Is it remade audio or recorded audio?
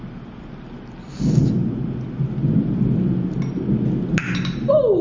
recorded